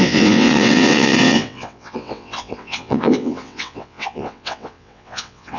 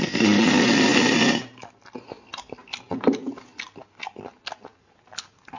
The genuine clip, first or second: second